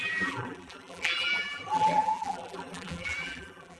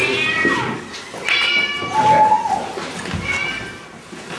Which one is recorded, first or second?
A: second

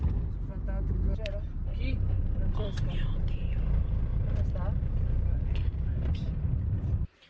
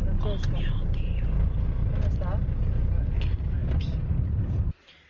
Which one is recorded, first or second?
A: second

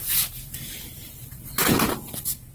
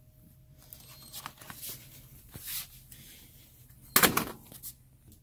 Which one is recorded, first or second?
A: second